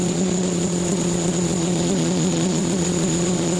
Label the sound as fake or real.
fake